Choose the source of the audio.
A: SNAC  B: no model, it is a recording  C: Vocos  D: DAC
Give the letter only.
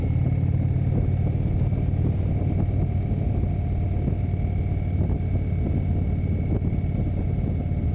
B